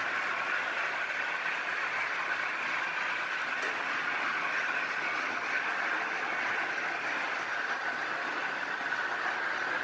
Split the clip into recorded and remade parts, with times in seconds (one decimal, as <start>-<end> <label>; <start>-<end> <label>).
0.0-9.8 recorded